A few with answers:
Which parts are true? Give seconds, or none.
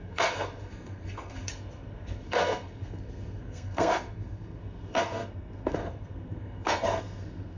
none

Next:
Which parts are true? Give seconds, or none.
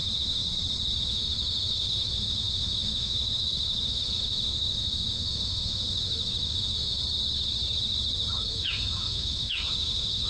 0.4-1.0; 7.0-8.3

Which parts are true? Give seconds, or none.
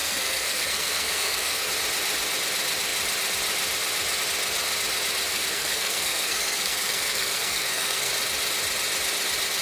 1.7-5.3; 8.1-9.6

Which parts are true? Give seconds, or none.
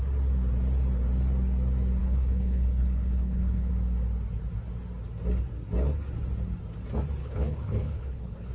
0.0-2.0; 3.7-7.2